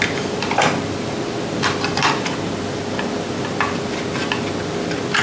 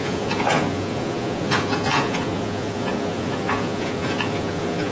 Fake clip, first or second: second